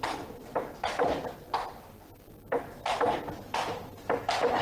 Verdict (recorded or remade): recorded